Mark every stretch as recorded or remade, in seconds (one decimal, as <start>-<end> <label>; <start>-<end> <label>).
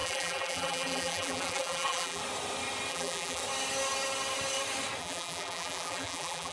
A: 0.0-2.2 remade; 2.2-2.9 recorded; 2.9-3.4 remade; 3.4-5.0 recorded; 5.0-6.5 remade